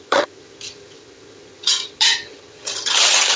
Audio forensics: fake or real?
fake